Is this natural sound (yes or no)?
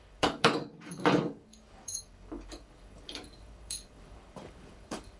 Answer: no